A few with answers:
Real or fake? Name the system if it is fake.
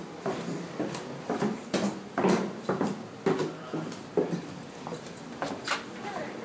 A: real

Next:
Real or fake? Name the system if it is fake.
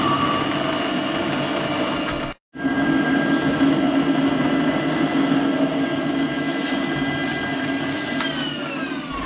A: real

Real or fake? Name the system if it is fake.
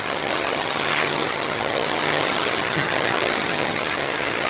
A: fake, vocoder, HiFi-GAN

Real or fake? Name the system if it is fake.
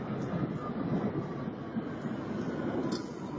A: real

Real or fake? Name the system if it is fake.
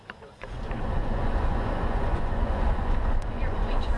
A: fake, vocoder, Vocos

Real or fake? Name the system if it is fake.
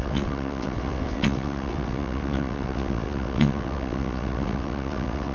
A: fake, vocoder, WaveNeXt